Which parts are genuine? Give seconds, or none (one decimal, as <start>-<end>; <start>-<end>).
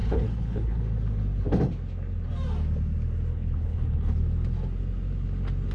0.8-3.3; 4.2-5.7